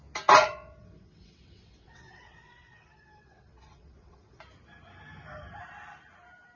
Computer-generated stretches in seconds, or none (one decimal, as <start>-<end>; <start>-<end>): 0.4-4.4